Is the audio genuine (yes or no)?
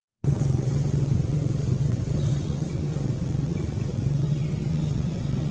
no